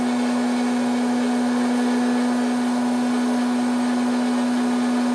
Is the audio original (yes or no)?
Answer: yes